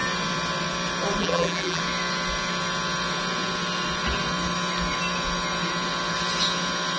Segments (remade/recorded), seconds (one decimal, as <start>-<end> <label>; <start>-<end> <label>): 0.0-1.2 recorded; 1.2-1.8 remade; 1.8-7.0 recorded